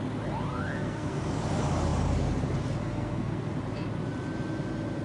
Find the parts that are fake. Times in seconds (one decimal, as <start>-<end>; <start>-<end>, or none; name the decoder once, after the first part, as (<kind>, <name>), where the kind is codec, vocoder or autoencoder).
0.5-1.2 (codec, SNAC); 2.8-3.4